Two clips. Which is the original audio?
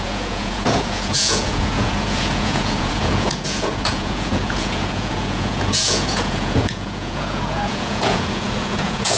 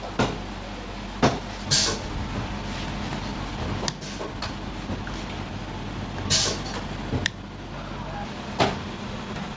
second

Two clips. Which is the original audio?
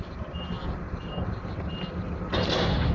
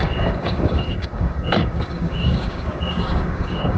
first